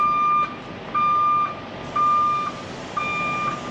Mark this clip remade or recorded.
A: recorded